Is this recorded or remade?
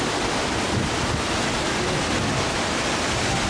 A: recorded